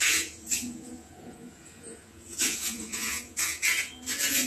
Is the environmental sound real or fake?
fake